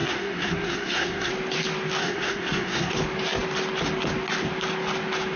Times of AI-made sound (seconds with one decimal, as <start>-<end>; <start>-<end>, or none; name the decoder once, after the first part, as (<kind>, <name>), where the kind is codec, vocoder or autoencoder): 0.0-1.3 (codec, SNAC); 2.0-2.9